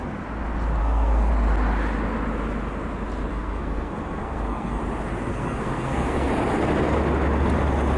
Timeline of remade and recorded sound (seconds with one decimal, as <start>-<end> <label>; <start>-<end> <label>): 0.0-0.8 recorded; 0.8-1.3 remade; 1.3-3.3 recorded; 3.3-4.8 remade; 4.8-5.3 recorded; 5.3-6.3 remade; 6.3-8.0 recorded